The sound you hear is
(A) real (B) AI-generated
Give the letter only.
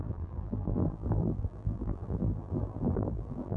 B